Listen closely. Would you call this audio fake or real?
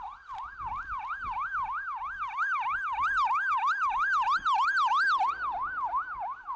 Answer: real